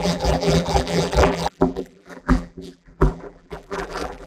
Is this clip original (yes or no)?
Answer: no